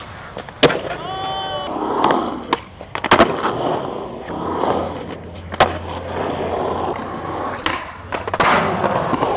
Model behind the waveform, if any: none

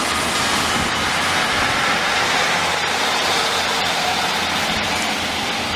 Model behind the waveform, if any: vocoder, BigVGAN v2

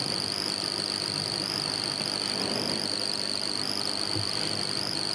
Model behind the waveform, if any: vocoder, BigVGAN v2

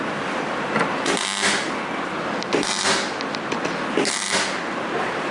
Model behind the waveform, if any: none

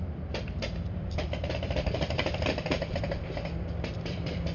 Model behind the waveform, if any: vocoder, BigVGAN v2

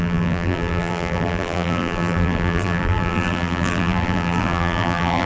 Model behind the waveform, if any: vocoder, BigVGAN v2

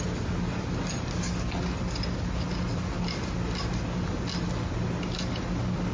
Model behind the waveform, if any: none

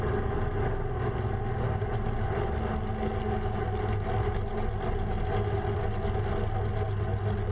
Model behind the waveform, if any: none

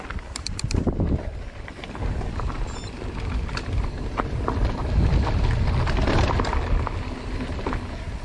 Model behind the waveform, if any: vocoder, BigVGAN v2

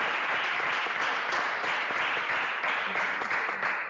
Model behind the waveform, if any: vocoder, BigVGAN v2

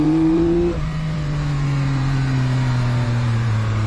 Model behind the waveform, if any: vocoder, BigVGAN v2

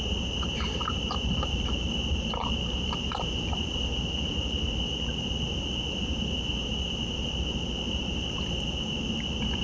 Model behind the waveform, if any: vocoder, BigVGAN v2